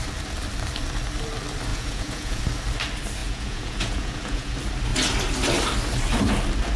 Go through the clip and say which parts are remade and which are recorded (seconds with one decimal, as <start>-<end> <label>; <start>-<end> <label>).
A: 0.0-1.7 recorded; 1.7-2.4 remade; 2.4-3.2 recorded; 3.2-4.5 remade; 4.5-6.8 recorded